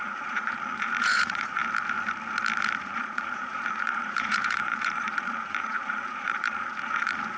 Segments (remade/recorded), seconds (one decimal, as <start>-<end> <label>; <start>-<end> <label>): 0.0-1.6 remade; 1.6-2.8 recorded; 2.8-7.4 remade